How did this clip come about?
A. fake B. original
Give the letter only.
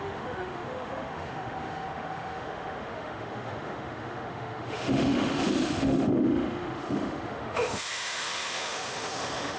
A